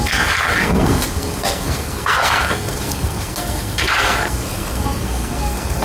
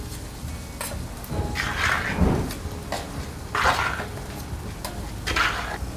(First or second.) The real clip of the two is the second